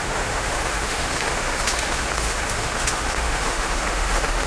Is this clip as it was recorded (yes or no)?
no